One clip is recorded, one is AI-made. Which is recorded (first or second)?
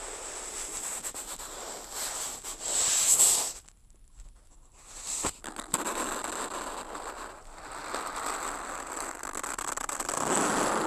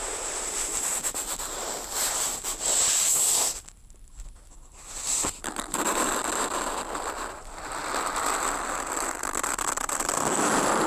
first